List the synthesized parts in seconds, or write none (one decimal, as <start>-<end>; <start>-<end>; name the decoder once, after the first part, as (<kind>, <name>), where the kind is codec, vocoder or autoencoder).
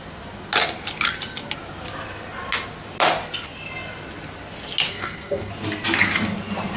4.9-5.5 (codec, SNAC)